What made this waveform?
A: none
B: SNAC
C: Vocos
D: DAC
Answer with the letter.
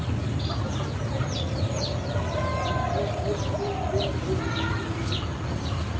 A